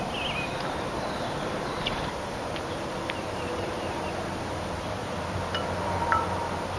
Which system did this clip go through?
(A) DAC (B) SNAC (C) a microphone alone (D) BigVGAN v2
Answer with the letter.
D